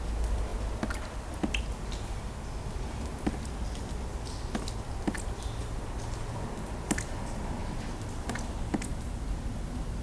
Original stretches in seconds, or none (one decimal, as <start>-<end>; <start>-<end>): 0.0-10.0

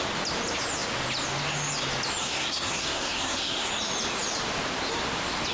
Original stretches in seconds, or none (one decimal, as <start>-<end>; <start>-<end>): 0.0-2.2; 3.7-5.5

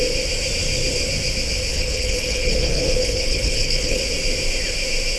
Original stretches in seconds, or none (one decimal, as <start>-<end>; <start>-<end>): 0.0-1.7; 4.0-5.2

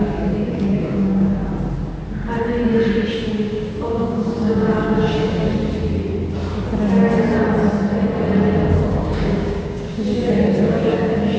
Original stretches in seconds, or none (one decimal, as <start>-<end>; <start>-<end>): 1.4-3.1; 5.5-8.9

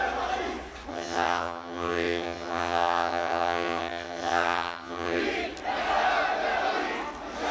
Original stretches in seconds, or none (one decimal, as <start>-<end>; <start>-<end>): 0.0-0.9; 5.2-7.5

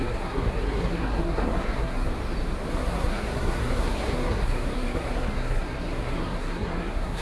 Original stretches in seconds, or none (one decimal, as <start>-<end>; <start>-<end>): 2.1-2.7